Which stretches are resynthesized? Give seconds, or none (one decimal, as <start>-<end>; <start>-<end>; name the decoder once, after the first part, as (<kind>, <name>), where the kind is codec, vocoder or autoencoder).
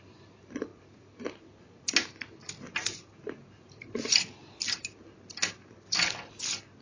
none